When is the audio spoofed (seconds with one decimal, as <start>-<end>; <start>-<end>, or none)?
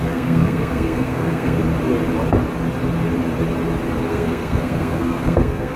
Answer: 0.0-1.6; 4.1-5.8